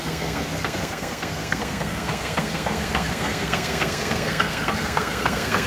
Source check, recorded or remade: remade